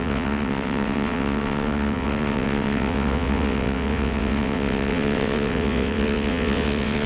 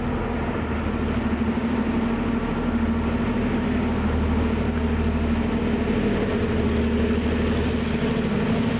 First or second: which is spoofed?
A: first